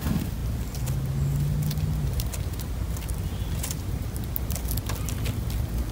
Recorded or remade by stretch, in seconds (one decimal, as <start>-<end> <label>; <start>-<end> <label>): 0.0-5.9 recorded